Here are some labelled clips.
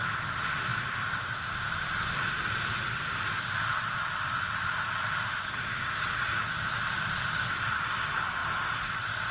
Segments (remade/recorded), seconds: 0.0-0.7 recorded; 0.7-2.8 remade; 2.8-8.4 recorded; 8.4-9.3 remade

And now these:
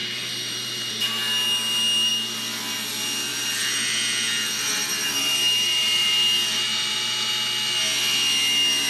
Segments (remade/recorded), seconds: 0.0-1.1 remade; 1.1-3.3 recorded; 3.3-7.3 remade; 7.3-8.9 recorded

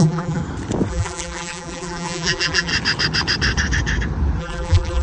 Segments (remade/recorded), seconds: 0.0-0.4 remade; 0.4-0.9 recorded; 0.9-2.7 remade; 2.7-4.4 recorded; 4.4-5.0 remade

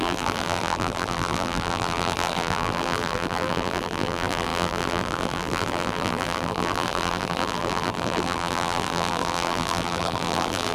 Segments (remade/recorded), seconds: 0.0-10.7 remade

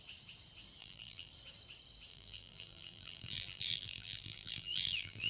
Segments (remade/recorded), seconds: 0.0-0.8 recorded; 0.8-1.3 remade; 1.3-2.1 recorded; 2.1-5.3 remade

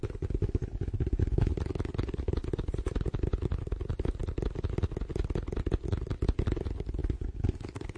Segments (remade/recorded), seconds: 0.0-4.2 remade; 4.2-5.4 recorded; 5.4-7.0 remade; 7.0-8.0 recorded